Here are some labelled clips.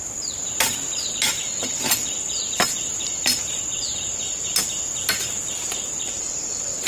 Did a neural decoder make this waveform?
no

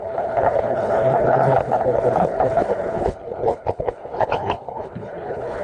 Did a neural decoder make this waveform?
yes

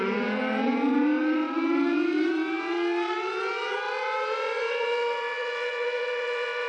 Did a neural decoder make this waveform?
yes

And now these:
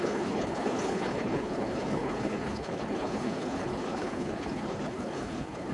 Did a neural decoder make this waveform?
yes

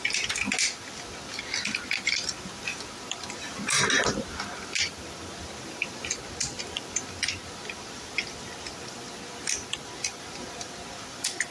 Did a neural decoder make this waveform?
no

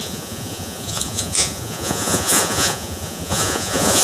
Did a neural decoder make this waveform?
yes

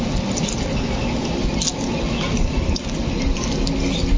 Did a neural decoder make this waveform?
no